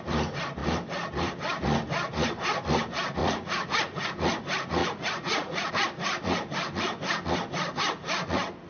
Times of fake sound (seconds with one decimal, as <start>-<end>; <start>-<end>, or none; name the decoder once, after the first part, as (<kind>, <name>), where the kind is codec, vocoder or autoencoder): 3.2-4.1 (vocoder, Vocos); 4.8-5.7